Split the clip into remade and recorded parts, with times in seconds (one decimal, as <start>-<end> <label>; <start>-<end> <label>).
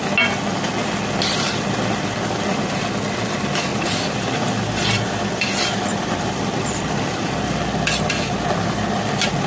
0.0-3.7 recorded; 3.7-7.8 remade; 7.8-9.5 recorded